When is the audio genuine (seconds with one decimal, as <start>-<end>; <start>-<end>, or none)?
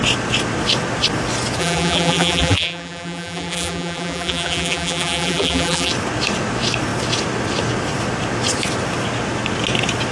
0.0-1.6; 5.9-10.1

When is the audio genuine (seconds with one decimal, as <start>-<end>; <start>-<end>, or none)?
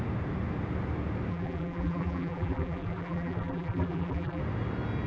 0.0-1.3; 4.4-5.1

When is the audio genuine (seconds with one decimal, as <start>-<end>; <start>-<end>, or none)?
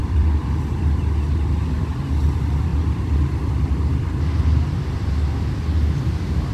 1.0-2.7; 5.1-6.5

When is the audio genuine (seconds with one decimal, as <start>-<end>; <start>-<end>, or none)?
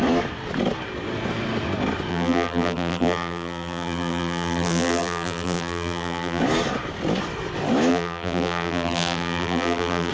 0.0-2.1; 6.4-7.9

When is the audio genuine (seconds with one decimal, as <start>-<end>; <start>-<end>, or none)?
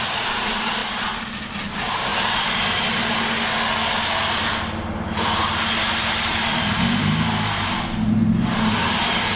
0.0-9.4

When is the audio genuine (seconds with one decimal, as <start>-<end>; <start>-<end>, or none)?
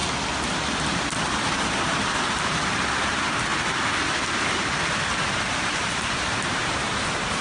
0.0-2.1; 3.5-5.6